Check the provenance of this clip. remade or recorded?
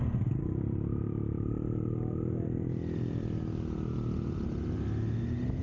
recorded